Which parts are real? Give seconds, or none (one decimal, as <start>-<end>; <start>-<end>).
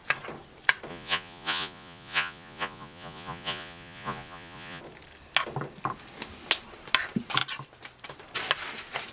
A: 0.0-0.9; 4.8-9.1